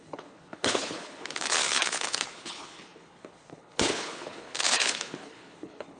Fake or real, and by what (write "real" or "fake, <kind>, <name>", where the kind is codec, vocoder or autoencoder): fake, codec, HILCodec